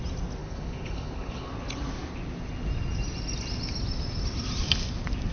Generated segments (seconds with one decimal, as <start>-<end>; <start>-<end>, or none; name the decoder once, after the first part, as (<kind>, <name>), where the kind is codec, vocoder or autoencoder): 0.4-1.5 (codec, HILCodec)